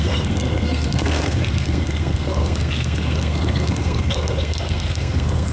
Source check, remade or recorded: remade